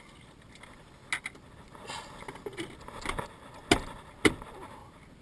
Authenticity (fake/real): real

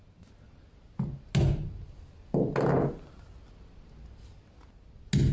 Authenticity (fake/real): real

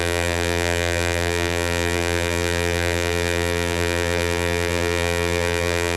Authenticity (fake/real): fake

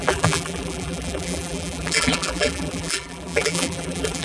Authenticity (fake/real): fake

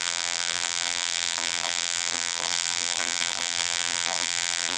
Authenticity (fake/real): fake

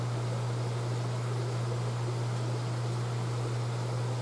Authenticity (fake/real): real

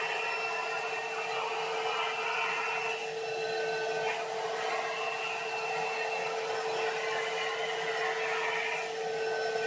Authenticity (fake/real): real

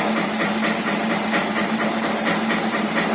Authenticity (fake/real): fake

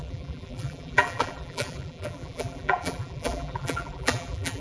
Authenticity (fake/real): fake